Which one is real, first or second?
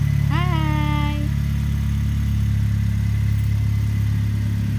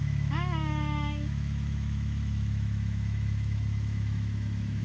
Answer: first